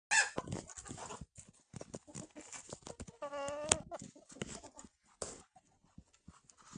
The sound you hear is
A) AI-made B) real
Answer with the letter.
B